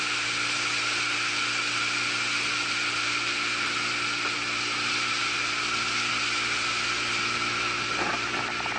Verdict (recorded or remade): recorded